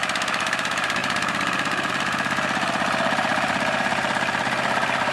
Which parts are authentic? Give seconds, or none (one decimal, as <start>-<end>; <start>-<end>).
none